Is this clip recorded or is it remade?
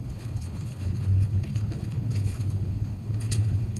remade